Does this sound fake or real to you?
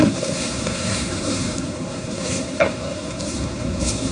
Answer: fake